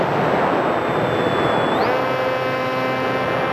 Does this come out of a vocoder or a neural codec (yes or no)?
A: no